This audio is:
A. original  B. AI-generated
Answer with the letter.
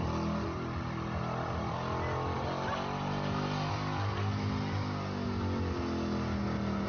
A